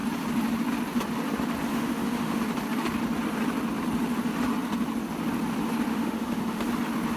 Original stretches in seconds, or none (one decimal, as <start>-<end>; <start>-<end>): 0.0-1.7; 2.4-5.9; 6.7-7.2